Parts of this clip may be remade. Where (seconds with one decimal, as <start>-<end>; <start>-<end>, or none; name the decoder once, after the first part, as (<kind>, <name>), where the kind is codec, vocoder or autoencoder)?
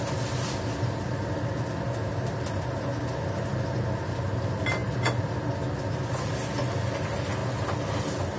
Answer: none